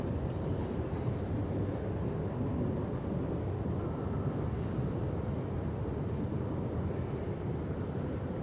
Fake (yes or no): no